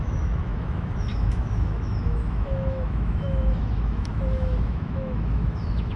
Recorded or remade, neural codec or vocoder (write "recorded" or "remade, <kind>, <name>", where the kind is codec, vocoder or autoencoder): remade, autoencoder, DAC-VAE